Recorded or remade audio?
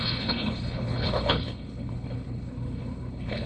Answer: remade